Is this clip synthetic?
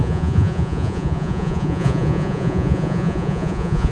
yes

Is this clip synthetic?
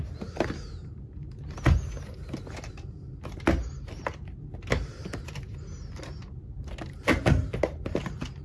no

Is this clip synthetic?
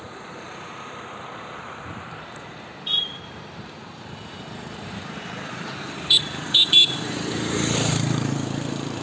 yes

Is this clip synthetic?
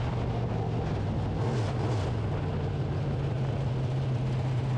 no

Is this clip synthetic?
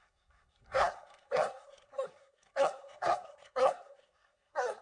yes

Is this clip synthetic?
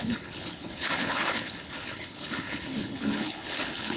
yes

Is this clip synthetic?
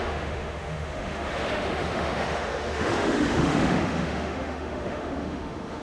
yes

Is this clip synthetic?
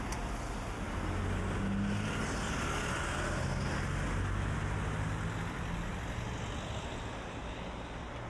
no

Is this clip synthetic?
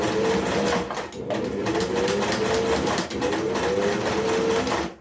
no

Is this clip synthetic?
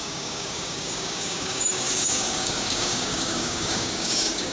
yes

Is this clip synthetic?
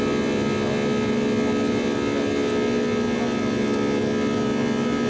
no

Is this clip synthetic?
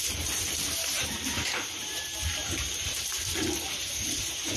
yes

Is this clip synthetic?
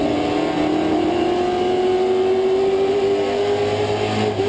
no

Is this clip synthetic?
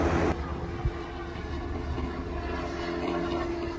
no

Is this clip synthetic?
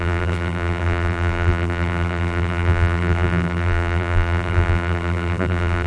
yes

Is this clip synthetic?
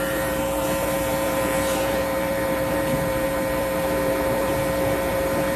yes